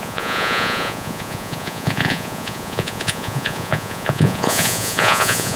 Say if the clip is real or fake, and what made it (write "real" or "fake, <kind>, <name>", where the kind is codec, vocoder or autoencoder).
fake, vocoder, Vocos